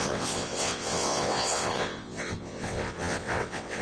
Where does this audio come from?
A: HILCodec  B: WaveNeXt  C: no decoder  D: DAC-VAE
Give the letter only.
B